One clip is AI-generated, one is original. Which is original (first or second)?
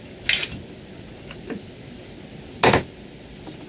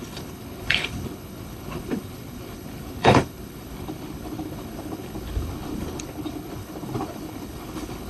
first